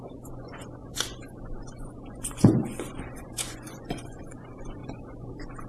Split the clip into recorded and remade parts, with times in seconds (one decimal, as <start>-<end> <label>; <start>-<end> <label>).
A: 0.0-5.7 remade